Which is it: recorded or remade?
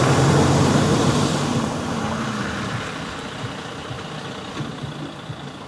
recorded